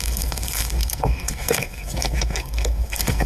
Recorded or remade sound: remade